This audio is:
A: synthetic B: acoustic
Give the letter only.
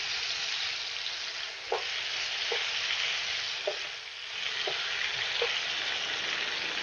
B